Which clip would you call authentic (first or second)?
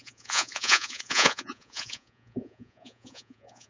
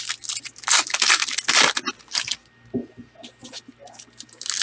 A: second